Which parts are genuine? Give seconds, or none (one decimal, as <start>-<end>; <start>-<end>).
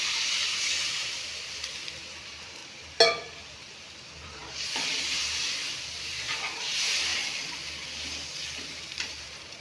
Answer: 2.6-3.4; 7.1-8.6